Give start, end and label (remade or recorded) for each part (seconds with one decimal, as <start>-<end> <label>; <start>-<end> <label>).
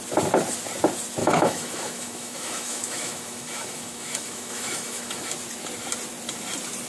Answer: 0.0-1.2 recorded; 1.2-5.3 remade; 5.3-6.9 recorded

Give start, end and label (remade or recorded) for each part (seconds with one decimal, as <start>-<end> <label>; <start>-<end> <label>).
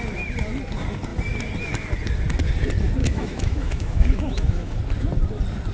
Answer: 0.0-3.0 recorded; 3.0-4.8 remade; 4.8-5.7 recorded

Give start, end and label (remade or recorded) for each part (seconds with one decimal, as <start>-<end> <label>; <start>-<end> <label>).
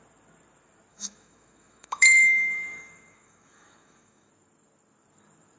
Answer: 0.0-0.9 recorded; 0.9-4.3 remade; 4.3-5.6 recorded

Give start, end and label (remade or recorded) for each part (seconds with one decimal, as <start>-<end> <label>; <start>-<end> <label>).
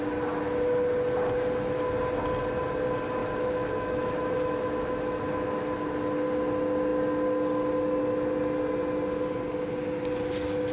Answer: 0.0-3.2 recorded; 3.2-5.2 remade; 5.2-10.7 recorded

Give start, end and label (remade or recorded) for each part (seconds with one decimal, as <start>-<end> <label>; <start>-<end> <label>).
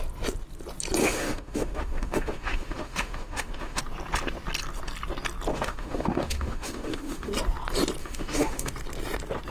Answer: 0.0-1.0 recorded; 1.0-3.8 remade; 3.8-5.5 recorded; 5.5-7.3 remade; 7.3-8.0 recorded; 8.0-8.7 remade; 8.7-9.5 recorded